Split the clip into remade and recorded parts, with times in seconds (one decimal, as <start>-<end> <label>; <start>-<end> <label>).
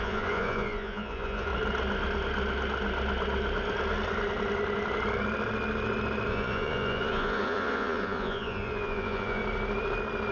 0.0-1.5 remade; 1.5-6.3 recorded; 6.3-9.4 remade; 9.4-10.3 recorded